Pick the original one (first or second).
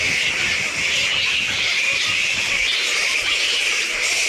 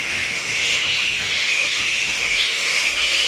first